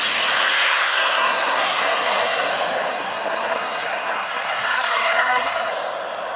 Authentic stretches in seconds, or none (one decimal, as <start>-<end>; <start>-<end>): 0.0-0.4; 2.5-2.9; 5.7-6.4